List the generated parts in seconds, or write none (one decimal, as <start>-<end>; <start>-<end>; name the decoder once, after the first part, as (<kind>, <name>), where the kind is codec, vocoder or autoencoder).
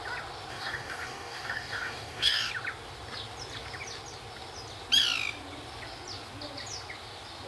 0.5-2.5 (codec, DAC)